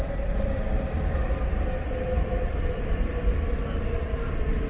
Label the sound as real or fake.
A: real